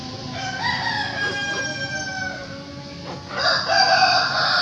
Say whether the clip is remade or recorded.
recorded